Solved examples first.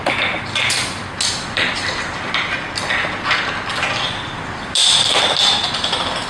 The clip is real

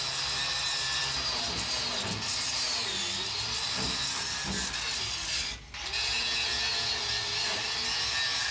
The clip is real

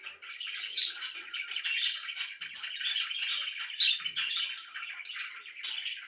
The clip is real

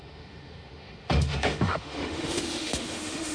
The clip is fake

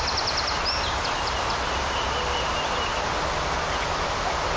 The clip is real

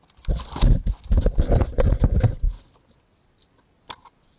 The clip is real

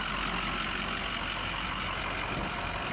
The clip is real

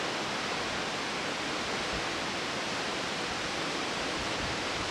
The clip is real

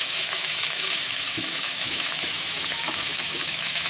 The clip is fake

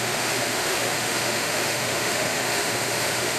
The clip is fake